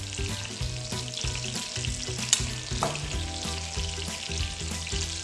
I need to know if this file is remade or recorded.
recorded